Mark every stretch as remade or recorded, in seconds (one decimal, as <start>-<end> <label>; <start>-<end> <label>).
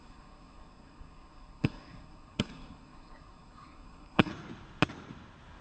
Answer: 0.0-4.3 remade; 4.3-5.6 recorded